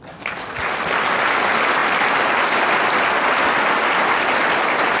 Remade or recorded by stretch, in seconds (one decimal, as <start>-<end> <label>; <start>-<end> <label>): 0.0-5.0 recorded